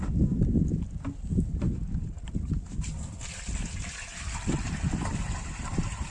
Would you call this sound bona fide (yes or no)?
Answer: yes